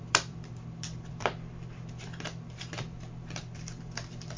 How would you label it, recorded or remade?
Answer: remade